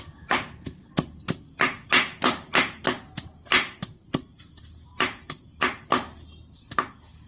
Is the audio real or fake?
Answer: real